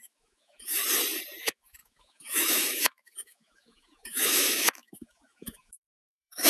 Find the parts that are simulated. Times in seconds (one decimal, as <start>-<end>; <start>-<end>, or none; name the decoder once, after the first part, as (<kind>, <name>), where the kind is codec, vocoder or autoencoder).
0.0-0.8 (autoencoder, DAC-VAE); 1.4-6.5